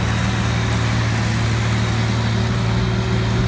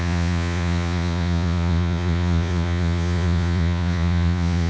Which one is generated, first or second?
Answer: second